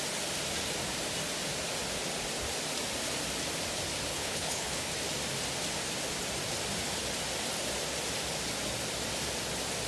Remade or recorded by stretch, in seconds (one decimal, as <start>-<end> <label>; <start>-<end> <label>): 0.0-4.1 recorded; 4.1-4.9 remade; 4.9-9.9 recorded